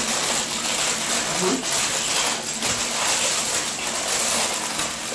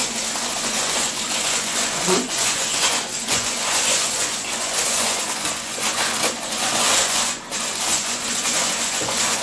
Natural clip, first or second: first